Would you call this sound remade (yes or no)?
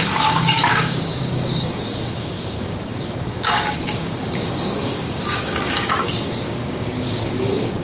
yes